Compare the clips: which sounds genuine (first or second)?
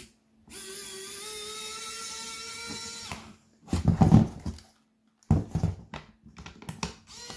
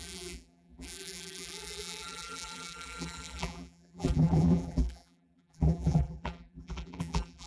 first